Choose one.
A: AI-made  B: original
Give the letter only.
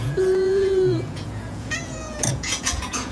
A